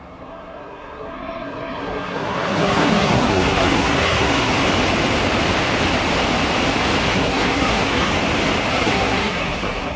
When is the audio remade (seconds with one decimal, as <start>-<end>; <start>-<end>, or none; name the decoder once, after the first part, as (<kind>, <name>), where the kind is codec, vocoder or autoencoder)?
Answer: 0.0-4.5 (codec, SNAC); 7.0-8.1; 8.7-10.0